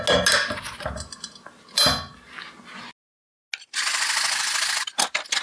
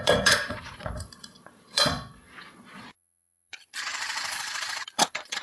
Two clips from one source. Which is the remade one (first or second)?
second